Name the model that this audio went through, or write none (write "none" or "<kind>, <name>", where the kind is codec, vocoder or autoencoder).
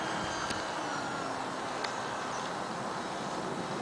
none